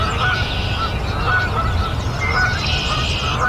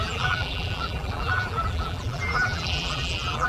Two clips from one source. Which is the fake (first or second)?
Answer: second